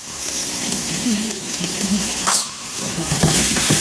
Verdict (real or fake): fake